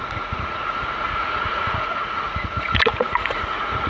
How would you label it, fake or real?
fake